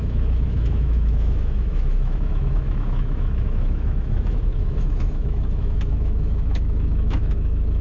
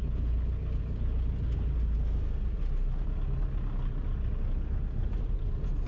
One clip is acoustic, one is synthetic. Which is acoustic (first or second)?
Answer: second